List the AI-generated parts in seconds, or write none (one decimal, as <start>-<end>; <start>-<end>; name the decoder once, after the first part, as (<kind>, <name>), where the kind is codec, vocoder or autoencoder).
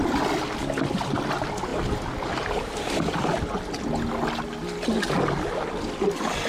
none